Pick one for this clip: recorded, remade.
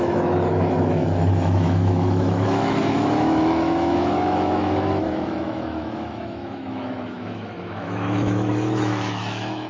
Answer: remade